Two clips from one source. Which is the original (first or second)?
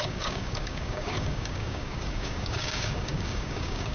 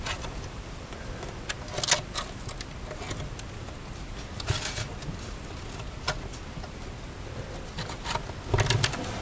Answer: second